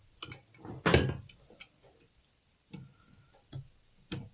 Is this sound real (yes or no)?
yes